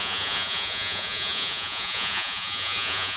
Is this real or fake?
fake